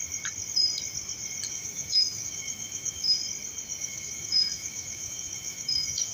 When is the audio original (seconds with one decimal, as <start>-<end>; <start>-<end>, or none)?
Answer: 0.0-1.5; 3.2-3.8